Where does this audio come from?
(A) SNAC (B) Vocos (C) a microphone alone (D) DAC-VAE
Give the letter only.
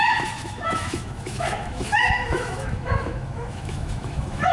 D